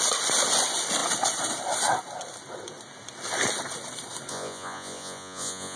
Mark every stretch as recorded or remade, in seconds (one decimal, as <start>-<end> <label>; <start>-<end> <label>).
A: 0.0-4.3 recorded; 4.3-5.8 remade